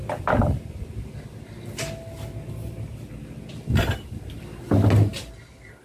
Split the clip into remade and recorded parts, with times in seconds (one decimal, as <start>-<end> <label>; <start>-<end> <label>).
0.0-5.8 recorded